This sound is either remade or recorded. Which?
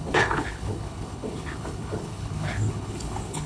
remade